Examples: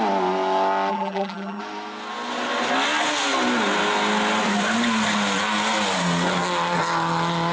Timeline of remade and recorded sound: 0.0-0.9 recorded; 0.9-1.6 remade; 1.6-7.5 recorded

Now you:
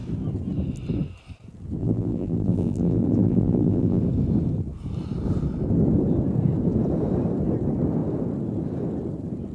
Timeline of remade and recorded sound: 0.0-1.8 recorded; 1.8-4.0 remade; 4.0-9.5 recorded